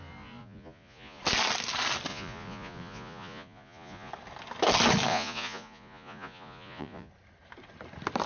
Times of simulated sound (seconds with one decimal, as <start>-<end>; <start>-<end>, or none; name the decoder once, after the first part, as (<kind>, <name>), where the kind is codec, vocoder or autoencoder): 0.4-1.2 (vocoder, Vocos); 2.1-4.1; 5.1-7.1